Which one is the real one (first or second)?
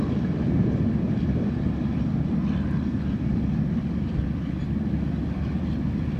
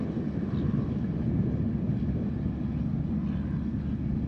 second